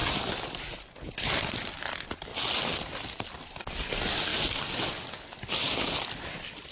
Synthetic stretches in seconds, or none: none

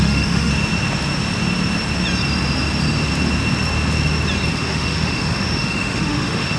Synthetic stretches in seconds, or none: 0.0-0.5 (autoencoder, DAC-VAE); 4.5-6.6

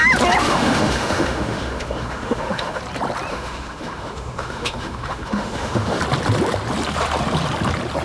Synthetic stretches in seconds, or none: 0.4-2.8 (autoencoder, DAC-VAE); 3.3-6.0

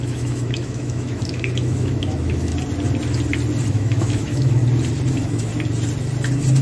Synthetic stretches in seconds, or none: 0.0-2.5 (autoencoder, DAC-VAE); 3.7-4.6; 5.1-5.5

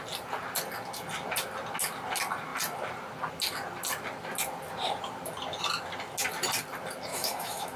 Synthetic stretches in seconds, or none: 7.1-7.8 (autoencoder, DAC-VAE)

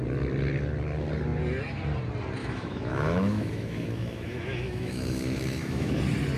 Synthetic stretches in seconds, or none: 2.4-6.0 (autoencoder, DAC-VAE)

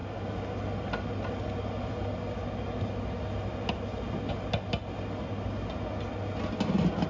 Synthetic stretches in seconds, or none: none